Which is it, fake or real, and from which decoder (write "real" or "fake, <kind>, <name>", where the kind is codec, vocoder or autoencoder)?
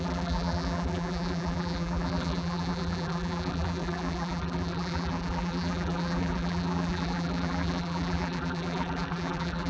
fake, vocoder, BigVGAN v2